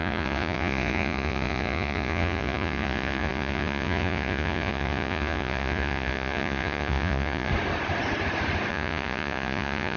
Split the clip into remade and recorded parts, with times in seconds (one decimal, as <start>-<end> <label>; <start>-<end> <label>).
0.0-7.5 remade; 7.5-8.7 recorded; 8.7-10.0 remade